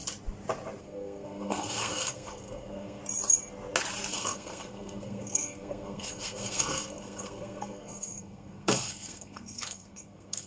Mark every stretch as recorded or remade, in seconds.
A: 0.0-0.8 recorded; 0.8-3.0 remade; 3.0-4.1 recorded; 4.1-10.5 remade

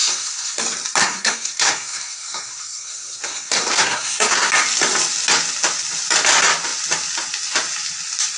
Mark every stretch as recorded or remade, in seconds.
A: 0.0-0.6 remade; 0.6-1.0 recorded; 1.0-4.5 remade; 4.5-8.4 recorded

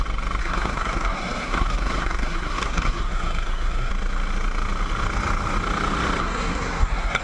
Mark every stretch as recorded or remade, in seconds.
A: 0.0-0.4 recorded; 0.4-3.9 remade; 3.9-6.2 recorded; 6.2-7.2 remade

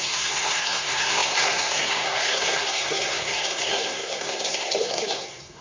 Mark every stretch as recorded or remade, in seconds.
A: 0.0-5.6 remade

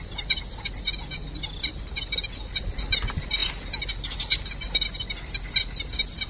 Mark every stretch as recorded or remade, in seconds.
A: 0.0-6.3 recorded